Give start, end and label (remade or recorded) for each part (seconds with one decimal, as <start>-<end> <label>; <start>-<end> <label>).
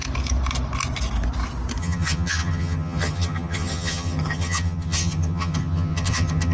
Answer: 0.0-1.8 recorded; 1.8-6.5 remade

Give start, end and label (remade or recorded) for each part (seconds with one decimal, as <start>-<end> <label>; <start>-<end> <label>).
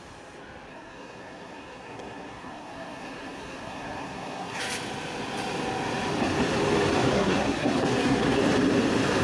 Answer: 0.0-0.7 recorded; 0.7-4.6 remade; 4.6-7.1 recorded; 7.1-8.4 remade; 8.4-9.2 recorded